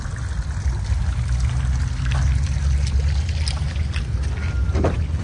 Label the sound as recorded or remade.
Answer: recorded